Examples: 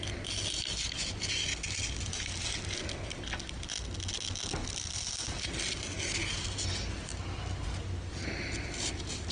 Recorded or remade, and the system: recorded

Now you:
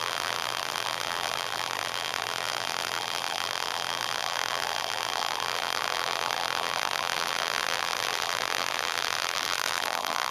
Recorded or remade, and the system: remade, vocoder, BigVGAN v2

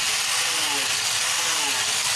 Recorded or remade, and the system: recorded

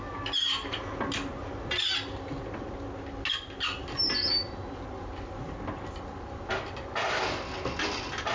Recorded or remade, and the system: recorded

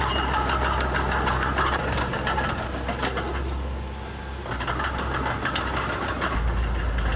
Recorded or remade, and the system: recorded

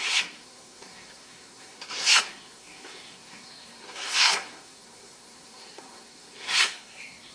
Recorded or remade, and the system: remade, codec, SNAC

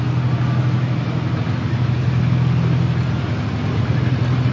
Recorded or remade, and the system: recorded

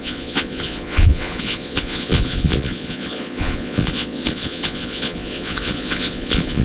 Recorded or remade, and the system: remade, vocoder, Vocos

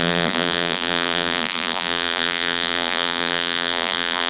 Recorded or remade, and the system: remade, vocoder, BigVGAN v2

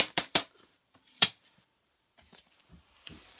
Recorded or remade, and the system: remade, vocoder, BigVGAN v2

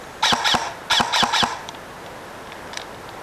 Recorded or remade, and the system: recorded